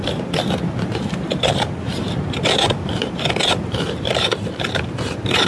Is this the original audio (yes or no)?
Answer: no